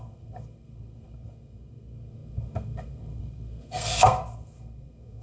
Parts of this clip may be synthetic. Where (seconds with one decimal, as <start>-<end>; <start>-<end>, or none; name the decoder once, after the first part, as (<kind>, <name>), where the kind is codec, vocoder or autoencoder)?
0.0-5.2 (codec, SNAC)